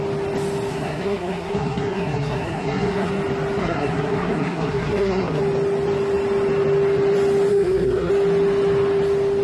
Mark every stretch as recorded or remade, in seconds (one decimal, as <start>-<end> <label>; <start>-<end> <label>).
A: 0.0-0.7 recorded; 0.7-3.1 remade; 3.1-3.6 recorded; 3.6-5.4 remade; 5.4-7.5 recorded; 7.5-8.1 remade; 8.1-9.4 recorded